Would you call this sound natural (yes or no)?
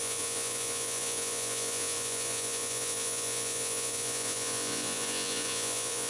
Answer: no